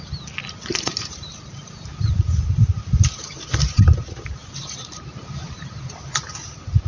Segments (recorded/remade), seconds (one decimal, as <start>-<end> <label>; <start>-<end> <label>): 0.0-0.7 recorded; 0.7-4.7 remade; 4.7-5.2 recorded; 5.2-5.9 remade; 5.9-6.9 recorded